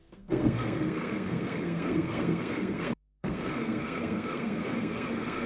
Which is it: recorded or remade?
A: remade